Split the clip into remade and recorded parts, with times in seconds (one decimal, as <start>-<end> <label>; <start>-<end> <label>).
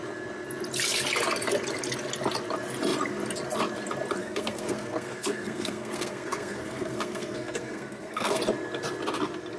0.0-4.2 recorded; 4.2-8.4 remade; 8.4-9.6 recorded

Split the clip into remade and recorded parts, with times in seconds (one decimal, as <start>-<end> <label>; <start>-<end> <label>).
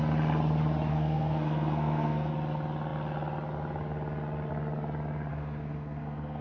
0.0-0.9 recorded; 0.9-2.3 remade; 2.3-5.3 recorded; 5.3-6.4 remade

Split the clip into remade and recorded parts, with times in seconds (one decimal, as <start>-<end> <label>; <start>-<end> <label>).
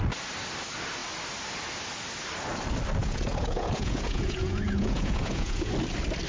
0.0-3.0 recorded; 3.0-5.7 remade; 5.7-6.3 recorded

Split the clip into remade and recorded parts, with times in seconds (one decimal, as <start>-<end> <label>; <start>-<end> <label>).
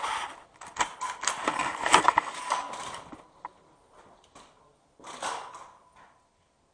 0.0-6.7 recorded